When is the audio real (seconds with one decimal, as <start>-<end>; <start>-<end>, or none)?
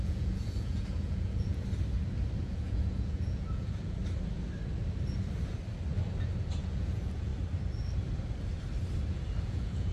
1.6-2.4; 4.0-6.6; 7.3-9.4